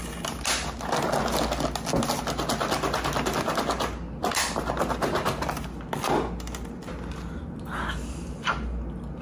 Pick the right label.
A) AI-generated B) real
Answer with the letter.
B